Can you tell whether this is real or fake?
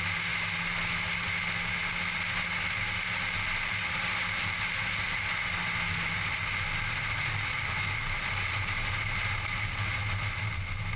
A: real